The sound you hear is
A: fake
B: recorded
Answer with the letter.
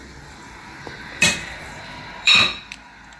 A